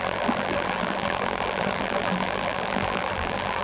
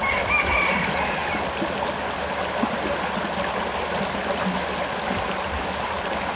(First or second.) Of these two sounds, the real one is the second